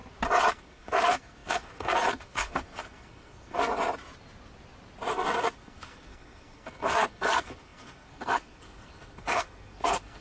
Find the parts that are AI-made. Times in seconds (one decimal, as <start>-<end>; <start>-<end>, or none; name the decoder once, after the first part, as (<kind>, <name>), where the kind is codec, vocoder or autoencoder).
0.5-3.7 (codec, SNAC); 5.1-10.2